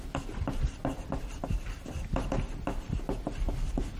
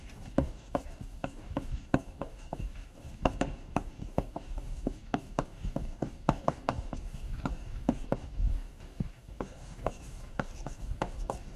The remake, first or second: second